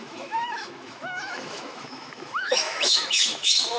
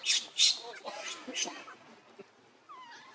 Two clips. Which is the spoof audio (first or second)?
first